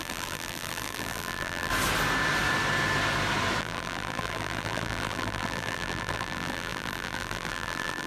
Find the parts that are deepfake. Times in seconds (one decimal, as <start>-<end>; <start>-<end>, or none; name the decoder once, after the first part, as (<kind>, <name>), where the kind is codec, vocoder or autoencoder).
0.0-1.7 (vocoder, BigVGAN v2); 3.6-8.1